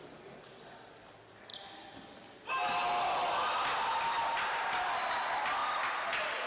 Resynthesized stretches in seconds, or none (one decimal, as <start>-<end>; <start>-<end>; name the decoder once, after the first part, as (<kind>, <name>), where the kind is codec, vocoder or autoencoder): none